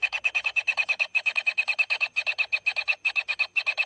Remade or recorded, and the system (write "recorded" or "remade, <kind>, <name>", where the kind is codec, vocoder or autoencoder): recorded